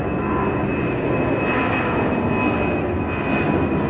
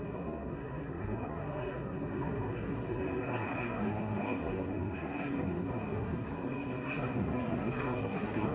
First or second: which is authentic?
first